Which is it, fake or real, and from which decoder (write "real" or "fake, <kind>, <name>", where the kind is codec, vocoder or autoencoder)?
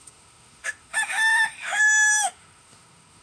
fake, autoencoder, DAC-VAE